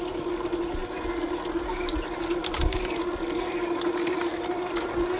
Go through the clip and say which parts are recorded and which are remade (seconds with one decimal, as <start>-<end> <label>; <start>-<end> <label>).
0.0-2.4 recorded; 2.4-3.9 remade; 3.9-5.2 recorded